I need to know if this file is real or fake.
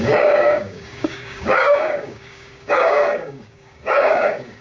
fake